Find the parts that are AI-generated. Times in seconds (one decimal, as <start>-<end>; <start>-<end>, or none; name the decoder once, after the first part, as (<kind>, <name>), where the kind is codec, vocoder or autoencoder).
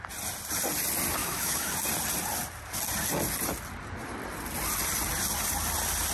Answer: 1.2-1.7 (autoencoder, DAC-VAE)